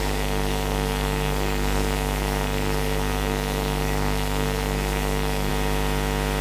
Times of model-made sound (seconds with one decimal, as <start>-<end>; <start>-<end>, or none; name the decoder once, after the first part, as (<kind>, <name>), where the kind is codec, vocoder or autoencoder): 0.0-5.5 (codec, SNAC)

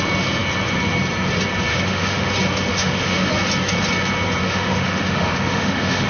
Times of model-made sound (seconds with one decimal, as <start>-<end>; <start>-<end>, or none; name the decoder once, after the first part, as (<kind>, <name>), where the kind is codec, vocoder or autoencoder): 1.7-2.3 (autoencoder, DAC-VAE); 2.7-3.3; 4.4-6.1

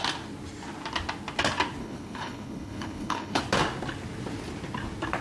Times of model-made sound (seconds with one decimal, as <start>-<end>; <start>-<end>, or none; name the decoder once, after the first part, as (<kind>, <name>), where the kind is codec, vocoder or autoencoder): 1.8-3.4 (codec, HILCodec)

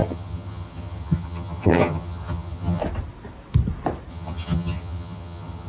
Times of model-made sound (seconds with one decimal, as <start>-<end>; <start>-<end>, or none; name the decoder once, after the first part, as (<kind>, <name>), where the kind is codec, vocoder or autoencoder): 0.0-2.8 (vocoder, HiFi-GAN); 4.1-5.7